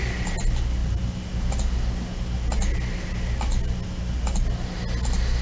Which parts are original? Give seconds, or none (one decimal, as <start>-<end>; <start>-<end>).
0.0-5.4